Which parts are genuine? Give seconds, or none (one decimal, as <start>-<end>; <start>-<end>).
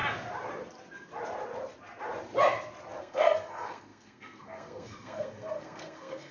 0.0-3.0